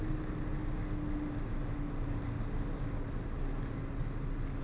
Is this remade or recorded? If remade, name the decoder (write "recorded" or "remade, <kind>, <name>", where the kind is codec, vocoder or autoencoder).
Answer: recorded